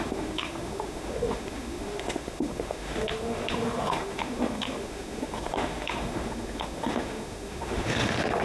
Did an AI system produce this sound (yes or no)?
yes